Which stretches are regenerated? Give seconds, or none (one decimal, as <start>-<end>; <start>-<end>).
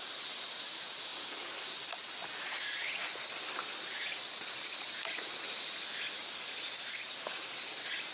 none